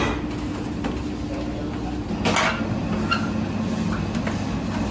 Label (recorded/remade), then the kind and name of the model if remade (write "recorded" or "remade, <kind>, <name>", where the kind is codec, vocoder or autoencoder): recorded